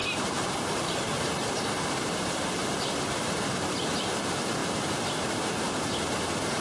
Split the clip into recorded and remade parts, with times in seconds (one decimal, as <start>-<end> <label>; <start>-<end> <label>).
0.0-3.0 remade; 3.0-6.6 recorded

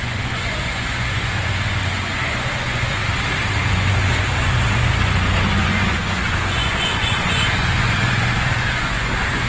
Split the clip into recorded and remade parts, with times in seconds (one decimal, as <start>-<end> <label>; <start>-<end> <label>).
0.0-3.0 remade; 3.0-3.6 recorded; 3.6-9.5 remade

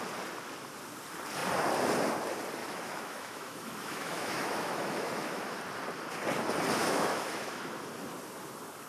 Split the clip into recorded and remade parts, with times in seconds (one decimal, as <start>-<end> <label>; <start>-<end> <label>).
0.0-2.6 recorded; 2.6-5.6 remade; 5.6-6.8 recorded; 6.8-7.7 remade; 7.7-8.9 recorded

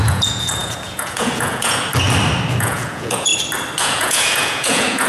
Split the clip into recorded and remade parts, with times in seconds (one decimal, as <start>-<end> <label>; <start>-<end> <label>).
0.0-1.9 remade; 1.9-2.6 recorded; 2.6-3.3 remade; 3.3-3.8 recorded; 3.8-5.1 remade

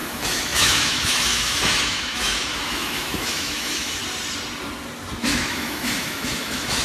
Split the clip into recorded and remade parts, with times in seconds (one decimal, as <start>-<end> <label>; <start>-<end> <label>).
0.0-4.0 remade; 4.0-5.2 recorded; 5.2-6.8 remade